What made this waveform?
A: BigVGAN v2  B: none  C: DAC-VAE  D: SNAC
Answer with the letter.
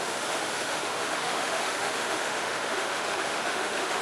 C